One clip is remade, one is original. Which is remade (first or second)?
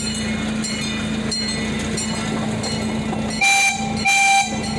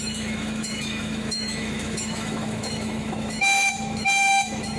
second